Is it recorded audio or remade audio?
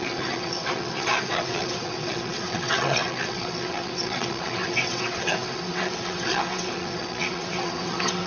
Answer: remade